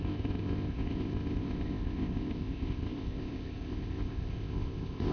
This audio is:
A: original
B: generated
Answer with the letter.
B